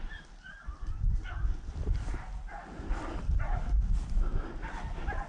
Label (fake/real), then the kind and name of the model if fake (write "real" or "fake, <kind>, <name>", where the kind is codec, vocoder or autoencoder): real